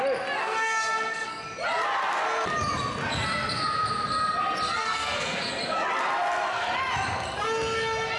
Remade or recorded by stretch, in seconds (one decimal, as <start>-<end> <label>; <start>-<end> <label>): 0.0-0.4 recorded; 0.4-1.3 remade; 1.3-4.8 recorded; 4.8-5.5 remade; 5.5-8.2 recorded

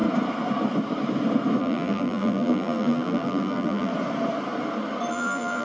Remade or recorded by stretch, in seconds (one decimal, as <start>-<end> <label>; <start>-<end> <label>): 0.0-1.6 recorded; 1.6-3.9 remade; 3.9-5.1 recorded; 5.1-5.6 remade

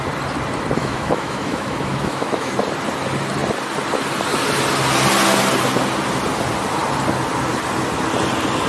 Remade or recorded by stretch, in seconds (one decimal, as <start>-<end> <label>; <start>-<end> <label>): 0.0-0.8 recorded; 0.8-2.5 remade; 2.5-8.7 recorded

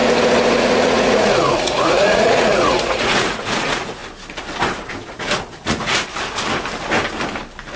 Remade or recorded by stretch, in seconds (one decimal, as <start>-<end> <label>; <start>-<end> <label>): 0.0-0.6 recorded; 0.6-4.0 remade; 4.0-4.8 recorded; 4.8-6.0 remade; 6.0-7.8 recorded

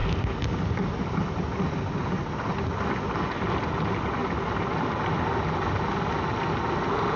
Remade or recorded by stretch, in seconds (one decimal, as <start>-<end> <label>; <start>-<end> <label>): 0.0-7.2 recorded